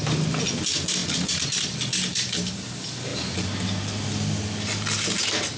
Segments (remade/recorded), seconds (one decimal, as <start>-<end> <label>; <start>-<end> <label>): 0.0-1.0 recorded; 1.0-2.6 remade; 2.6-5.6 recorded